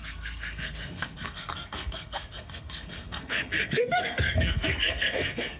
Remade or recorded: remade